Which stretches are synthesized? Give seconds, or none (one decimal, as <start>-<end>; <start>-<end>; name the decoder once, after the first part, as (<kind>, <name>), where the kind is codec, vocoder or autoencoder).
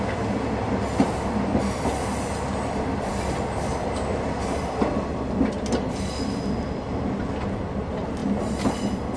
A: none